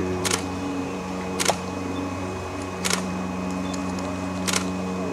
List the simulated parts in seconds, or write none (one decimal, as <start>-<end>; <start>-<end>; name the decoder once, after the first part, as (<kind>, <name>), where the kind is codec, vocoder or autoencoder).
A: 0.0-3.1 (vocoder, BigVGAN v2)